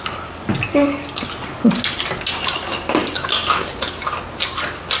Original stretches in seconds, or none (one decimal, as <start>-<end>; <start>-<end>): 0.0-5.0